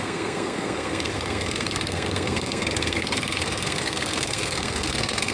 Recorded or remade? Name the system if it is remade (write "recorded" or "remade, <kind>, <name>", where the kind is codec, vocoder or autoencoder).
remade, codec, SNAC